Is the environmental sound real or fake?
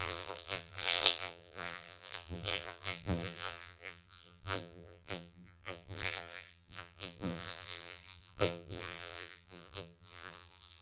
fake